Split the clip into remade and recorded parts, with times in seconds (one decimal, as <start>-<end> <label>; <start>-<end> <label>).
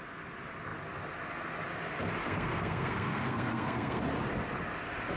0.0-2.2 recorded; 2.2-4.0 remade; 4.0-5.2 recorded